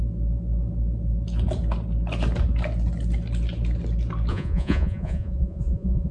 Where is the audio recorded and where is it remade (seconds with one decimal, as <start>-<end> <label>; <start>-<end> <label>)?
0.0-4.3 recorded; 4.3-6.1 remade